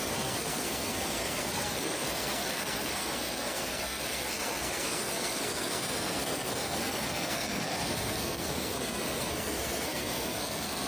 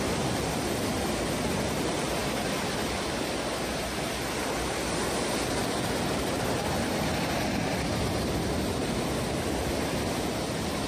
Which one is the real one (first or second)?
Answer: second